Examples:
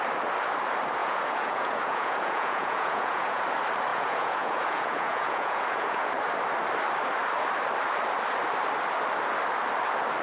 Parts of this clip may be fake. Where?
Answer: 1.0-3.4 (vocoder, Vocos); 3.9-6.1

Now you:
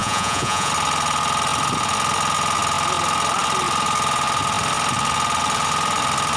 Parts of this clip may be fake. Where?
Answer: 0.0-0.7 (vocoder, Vocos)

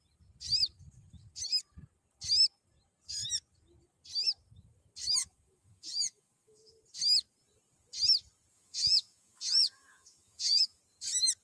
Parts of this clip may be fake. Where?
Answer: 5.2-6.7 (vocoder, Vocos); 8.5-10.8

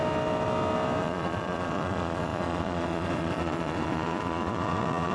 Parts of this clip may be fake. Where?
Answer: 1.0-5.1 (vocoder, Vocos)

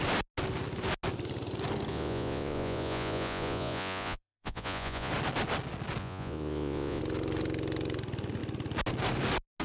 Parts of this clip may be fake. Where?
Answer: 1.9-5.1 (vocoder, Vocos); 6.0-7.0